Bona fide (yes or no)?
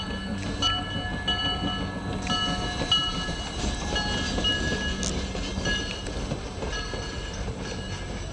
yes